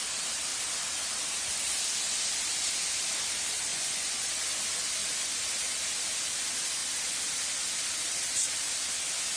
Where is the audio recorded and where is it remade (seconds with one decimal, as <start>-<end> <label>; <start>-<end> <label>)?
0.0-3.7 recorded; 3.7-4.3 remade; 4.3-9.4 recorded